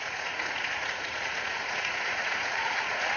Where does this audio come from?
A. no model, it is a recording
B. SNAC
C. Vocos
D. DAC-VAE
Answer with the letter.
C